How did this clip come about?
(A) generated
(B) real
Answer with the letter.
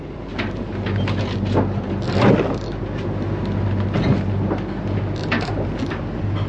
B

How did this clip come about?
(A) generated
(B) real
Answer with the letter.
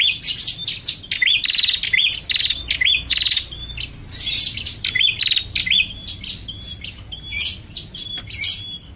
B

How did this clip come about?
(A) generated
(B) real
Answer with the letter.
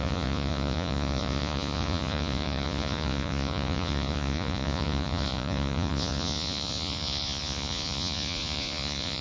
A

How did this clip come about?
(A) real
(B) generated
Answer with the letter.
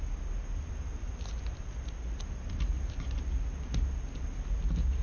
A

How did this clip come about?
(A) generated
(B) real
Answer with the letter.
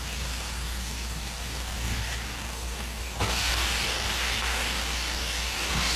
A